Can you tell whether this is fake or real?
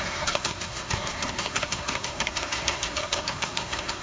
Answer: fake